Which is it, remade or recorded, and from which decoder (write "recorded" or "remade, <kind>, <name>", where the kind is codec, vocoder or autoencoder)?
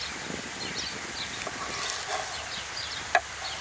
recorded